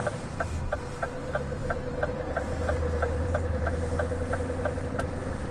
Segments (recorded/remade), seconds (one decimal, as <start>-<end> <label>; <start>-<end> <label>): 0.0-0.8 remade; 0.8-1.6 recorded; 1.6-3.6 remade; 3.6-5.5 recorded